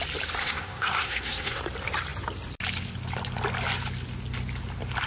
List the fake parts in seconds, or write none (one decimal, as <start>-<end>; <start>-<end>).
0.4-1.6